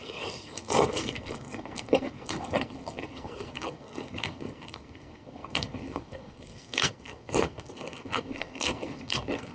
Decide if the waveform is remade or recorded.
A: remade